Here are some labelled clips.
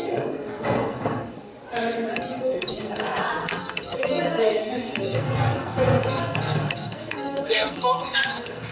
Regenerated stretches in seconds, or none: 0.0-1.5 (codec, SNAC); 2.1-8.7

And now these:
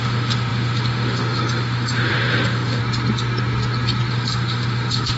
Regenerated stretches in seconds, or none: 0.0-2.8 (autoencoder, DAC-VAE); 4.1-5.2

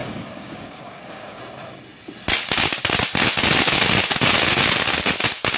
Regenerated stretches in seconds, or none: 0.0-1.4 (codec, DAC)

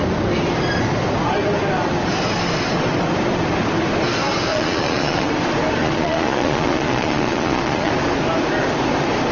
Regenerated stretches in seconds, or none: 4.5-5.3 (vocoder, Vocos); 5.8-7.9

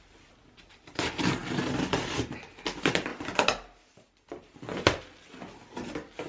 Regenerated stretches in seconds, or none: none

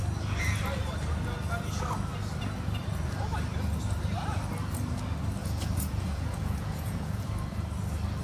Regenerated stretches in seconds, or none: 5.4-7.3 (vocoder, Vocos)

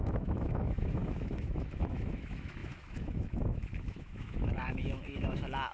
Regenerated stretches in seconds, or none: 0.0-5.7 (autoencoder, DAC-VAE)